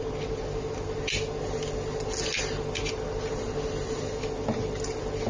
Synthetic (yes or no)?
no